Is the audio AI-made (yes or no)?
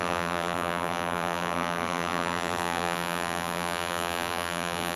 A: yes